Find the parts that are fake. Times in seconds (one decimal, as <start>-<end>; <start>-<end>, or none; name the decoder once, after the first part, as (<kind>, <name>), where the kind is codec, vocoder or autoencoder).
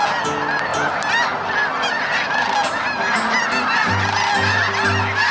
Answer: none